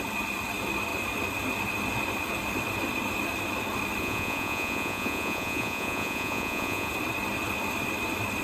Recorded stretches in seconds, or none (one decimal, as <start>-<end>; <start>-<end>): 0.0-4.0; 6.9-8.4